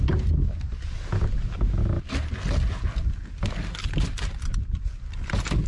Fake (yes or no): no